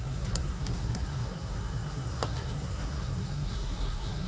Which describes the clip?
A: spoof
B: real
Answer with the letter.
A